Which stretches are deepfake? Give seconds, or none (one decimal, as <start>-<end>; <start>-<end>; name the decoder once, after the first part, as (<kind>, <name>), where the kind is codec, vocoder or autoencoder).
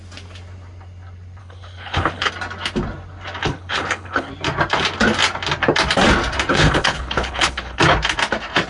1.4-2.3 (codec, HILCodec); 3.4-4.3; 6.5-7.8